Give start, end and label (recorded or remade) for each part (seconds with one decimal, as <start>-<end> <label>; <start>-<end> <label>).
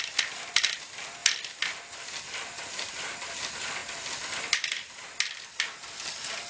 0.0-6.5 recorded